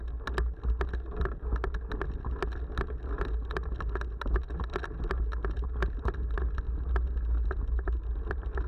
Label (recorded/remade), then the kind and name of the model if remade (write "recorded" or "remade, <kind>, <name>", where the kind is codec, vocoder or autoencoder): recorded